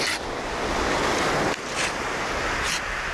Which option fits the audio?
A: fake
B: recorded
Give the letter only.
B